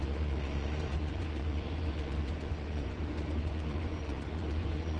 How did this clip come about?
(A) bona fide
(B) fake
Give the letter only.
B